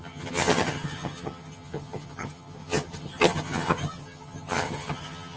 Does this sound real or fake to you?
fake